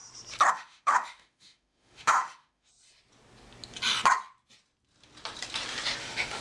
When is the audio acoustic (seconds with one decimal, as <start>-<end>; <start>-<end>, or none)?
0.0-0.5; 2.7-6.0